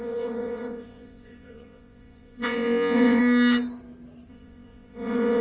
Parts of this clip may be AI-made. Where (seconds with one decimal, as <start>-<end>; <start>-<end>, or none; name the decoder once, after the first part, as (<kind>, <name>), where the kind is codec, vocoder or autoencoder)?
0.0-3.2 (vocoder, Vocos); 4.3-5.4